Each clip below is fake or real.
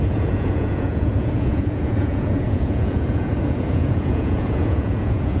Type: fake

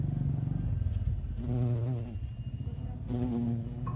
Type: real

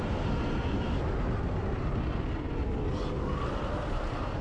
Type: real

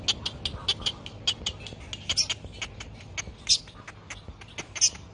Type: real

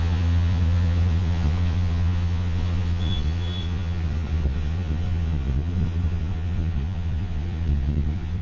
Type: fake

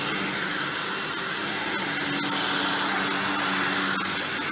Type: real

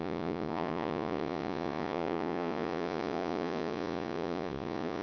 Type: fake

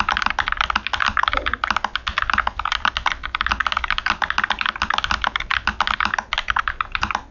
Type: real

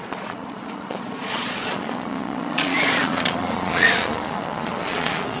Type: fake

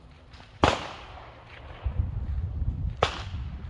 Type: real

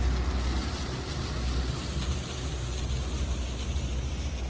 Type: real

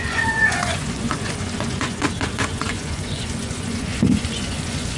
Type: fake